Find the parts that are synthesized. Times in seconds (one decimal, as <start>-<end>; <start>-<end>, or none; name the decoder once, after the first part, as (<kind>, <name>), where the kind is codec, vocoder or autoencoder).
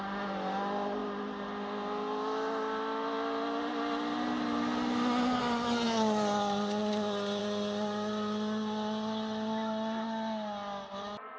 none